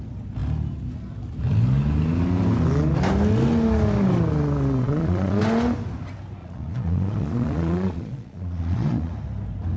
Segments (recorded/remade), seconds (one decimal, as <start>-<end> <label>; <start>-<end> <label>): 0.0-4.8 recorded; 4.8-5.4 remade; 5.4-6.4 recorded; 6.4-9.1 remade; 9.1-9.8 recorded